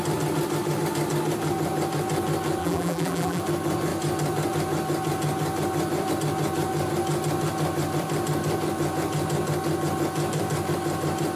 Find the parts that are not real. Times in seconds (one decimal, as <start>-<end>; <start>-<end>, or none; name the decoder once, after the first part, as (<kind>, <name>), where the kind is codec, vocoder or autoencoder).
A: 2.6-3.4 (vocoder, BigVGAN v2)